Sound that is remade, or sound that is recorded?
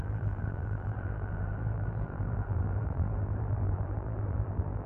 remade